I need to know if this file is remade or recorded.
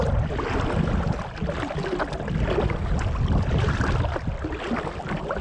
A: recorded